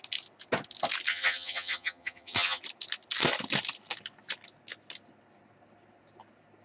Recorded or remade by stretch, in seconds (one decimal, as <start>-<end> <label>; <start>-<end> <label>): 0.0-1.1 recorded; 1.1-2.6 remade; 2.6-6.6 recorded